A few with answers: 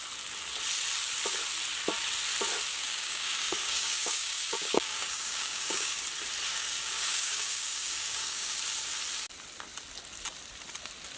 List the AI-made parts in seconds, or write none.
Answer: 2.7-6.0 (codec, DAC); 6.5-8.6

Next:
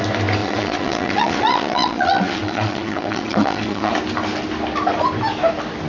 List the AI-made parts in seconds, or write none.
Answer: 0.4-3.9 (vocoder, Vocos)

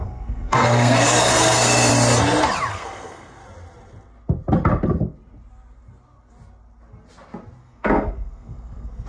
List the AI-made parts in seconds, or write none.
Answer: 0.0-1.9 (codec, SNAC); 2.7-3.4; 7.6-9.1

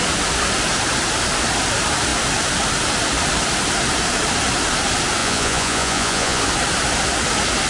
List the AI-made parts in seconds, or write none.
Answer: 5.2-6.4 (vocoder, Vocos)

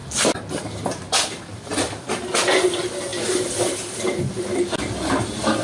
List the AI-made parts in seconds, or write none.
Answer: none